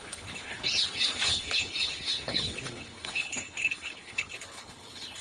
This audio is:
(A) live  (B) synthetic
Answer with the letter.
B